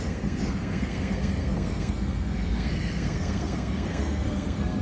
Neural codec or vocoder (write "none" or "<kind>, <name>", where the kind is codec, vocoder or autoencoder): codec, SNAC